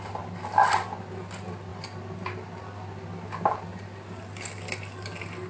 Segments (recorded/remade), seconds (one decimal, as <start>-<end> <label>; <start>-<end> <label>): 0.0-5.5 recorded